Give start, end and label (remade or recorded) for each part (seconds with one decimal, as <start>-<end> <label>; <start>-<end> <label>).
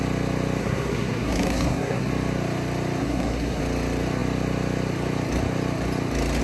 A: 0.0-0.6 recorded; 0.6-2.1 remade; 2.1-3.0 recorded; 3.0-3.6 remade; 3.6-6.4 recorded